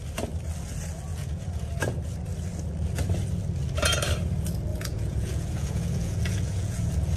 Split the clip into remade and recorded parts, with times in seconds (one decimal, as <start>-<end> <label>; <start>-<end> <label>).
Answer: 0.0-1.1 recorded; 1.1-1.7 remade; 1.7-4.7 recorded; 4.7-7.2 remade